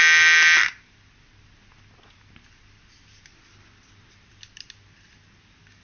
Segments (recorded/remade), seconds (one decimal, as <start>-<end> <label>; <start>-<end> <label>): 0.0-5.8 recorded